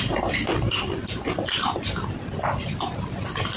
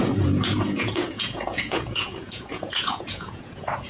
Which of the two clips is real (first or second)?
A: first